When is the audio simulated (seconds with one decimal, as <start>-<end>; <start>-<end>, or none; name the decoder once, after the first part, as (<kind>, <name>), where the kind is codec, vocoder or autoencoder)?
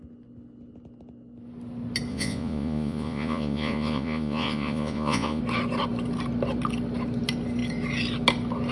2.1-5.4 (vocoder, Vocos)